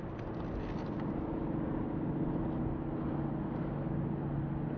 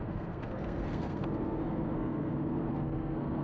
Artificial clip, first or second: second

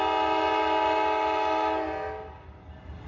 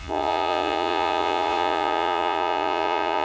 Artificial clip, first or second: second